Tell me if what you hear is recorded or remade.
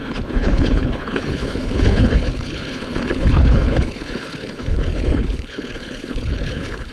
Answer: remade